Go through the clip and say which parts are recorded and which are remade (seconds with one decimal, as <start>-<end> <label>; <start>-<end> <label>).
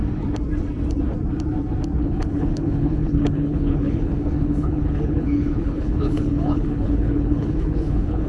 0.0-2.0 recorded; 2.0-8.3 remade